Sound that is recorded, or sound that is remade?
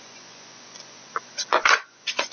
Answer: remade